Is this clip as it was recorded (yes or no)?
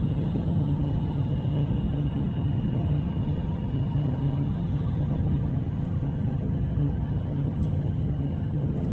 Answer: no